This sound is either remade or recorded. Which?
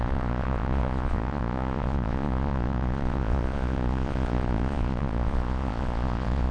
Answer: remade